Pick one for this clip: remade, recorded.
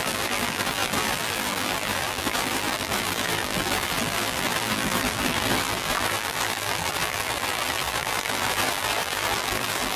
remade